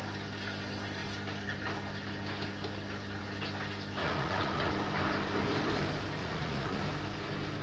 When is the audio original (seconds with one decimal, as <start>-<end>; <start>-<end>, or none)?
0.0-4.0; 4.7-6.2; 6.8-7.6